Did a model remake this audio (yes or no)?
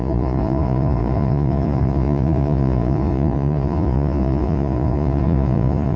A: yes